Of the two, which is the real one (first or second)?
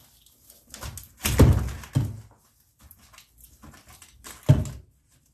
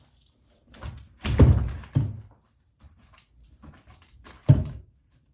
first